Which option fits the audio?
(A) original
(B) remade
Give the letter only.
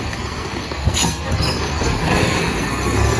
B